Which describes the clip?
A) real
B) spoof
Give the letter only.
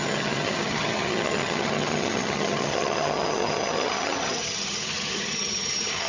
B